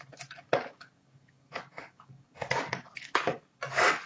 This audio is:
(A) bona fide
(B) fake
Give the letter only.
B